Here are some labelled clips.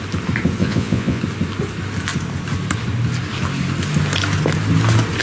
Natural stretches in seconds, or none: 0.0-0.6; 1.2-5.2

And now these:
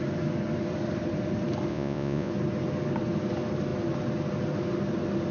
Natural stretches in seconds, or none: 0.0-1.7; 2.3-5.3

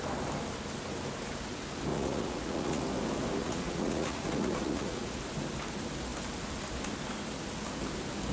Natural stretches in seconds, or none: 0.0-1.9; 2.8-3.4; 5.2-8.3

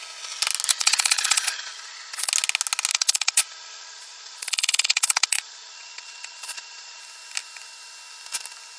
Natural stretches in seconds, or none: 0.0-0.7; 2.3-2.9; 7.0-8.8

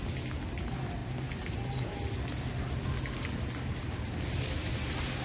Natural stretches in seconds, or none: 0.0-5.2